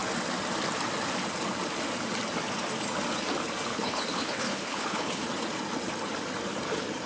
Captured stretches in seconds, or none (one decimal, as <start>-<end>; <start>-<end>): 0.0-3.7; 5.2-7.1

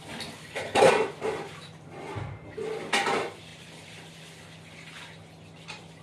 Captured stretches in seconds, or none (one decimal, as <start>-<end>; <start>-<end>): 0.0-0.4; 0.9-6.0